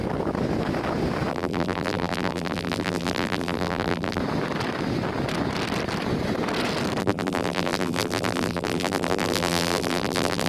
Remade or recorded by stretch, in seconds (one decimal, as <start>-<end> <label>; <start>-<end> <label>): 0.0-1.3 recorded; 1.3-4.2 remade; 4.2-7.0 recorded; 7.0-10.5 remade

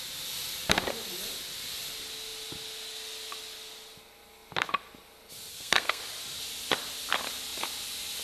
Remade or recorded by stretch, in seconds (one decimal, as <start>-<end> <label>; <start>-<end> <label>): 0.0-5.5 recorded; 5.5-6.0 remade; 6.0-8.2 recorded

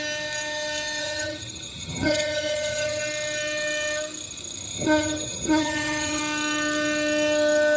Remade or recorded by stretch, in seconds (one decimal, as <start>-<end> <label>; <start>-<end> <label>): 0.0-1.0 recorded; 1.0-3.0 remade; 3.0-4.7 recorded; 4.7-6.2 remade; 6.2-7.8 recorded